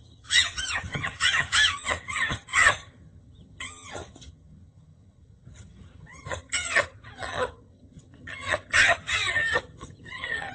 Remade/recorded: remade